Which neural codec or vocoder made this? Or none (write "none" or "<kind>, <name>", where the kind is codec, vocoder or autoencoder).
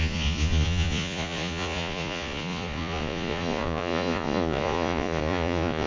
vocoder, Vocos